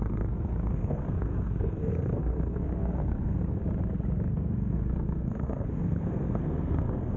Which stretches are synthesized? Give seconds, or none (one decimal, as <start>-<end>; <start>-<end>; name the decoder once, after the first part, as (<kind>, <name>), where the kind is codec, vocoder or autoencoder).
0.0-3.6 (codec, SNAC); 4.3-7.2